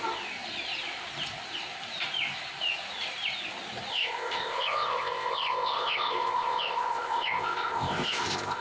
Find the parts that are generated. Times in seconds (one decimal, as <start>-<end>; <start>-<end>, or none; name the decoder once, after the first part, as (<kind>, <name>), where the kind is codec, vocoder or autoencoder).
3.9-8.6 (codec, ZipCodec)